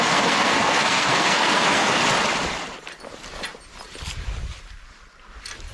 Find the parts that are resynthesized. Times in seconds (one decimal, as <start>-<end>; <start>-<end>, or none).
0.0-2.0